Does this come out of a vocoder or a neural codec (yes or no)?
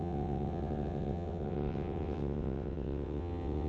yes